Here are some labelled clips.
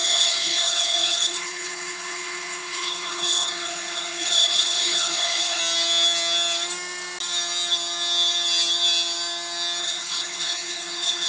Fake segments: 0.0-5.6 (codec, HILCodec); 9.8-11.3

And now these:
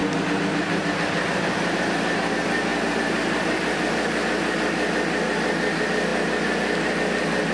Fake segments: 0.0-2.3 (vocoder, BigVGAN v2); 2.7-3.9

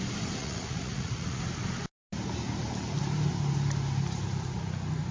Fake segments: 0.4-1.4 (vocoder, Vocos)

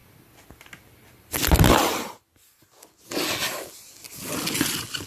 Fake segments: none

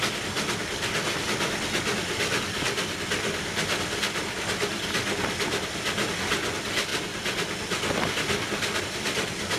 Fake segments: none

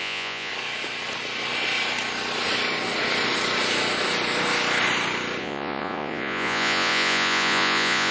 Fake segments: 0.0-0.5 (vocoder, Vocos); 5.4-8.1

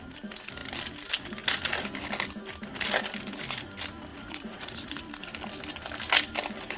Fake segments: 4.1-5.0 (vocoder, Vocos)

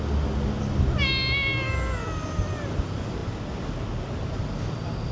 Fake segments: none